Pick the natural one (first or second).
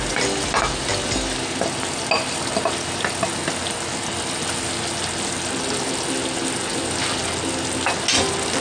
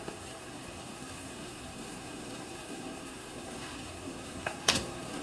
first